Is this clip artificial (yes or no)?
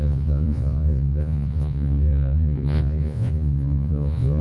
yes